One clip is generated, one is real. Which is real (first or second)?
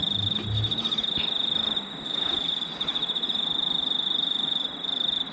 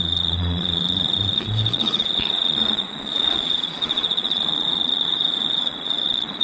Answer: first